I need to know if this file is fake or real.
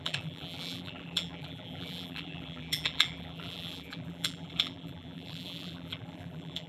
fake